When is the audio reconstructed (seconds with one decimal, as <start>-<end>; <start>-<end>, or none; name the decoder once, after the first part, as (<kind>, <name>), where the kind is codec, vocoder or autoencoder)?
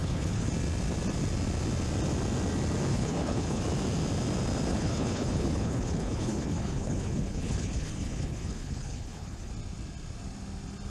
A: 0.0-0.5 (codec, HILCodec); 2.9-3.6; 4.7-9.5